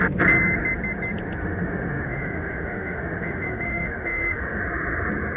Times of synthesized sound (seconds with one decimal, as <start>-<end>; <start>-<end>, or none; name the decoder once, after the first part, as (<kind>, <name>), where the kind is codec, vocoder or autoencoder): 1.4-4.6 (autoencoder, DAC-VAE)